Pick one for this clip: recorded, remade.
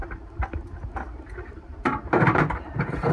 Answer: remade